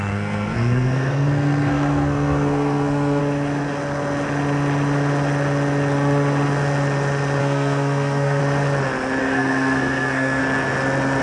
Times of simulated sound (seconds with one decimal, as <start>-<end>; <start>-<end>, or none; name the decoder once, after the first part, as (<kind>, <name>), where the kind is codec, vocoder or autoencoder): 0.0-3.2 (codec, SNAC); 7.4-8.4; 9.2-10.4